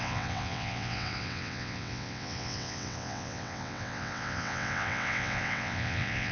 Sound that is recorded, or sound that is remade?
remade